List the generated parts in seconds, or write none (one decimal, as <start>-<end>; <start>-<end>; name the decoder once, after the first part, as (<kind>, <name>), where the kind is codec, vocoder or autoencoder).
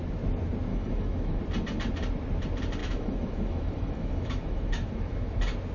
0.7-1.4 (autoencoder, DAC-VAE); 2.8-5.3